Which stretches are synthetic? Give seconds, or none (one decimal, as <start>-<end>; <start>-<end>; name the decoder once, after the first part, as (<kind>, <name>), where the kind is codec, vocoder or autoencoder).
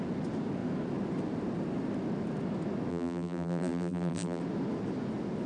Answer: 2.9-4.4 (vocoder, BigVGAN v2)